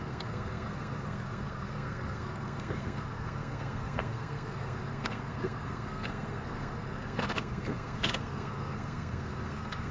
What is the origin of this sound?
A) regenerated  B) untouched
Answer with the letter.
A